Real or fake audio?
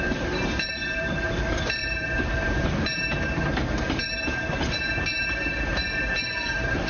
fake